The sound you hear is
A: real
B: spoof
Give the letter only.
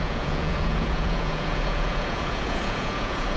B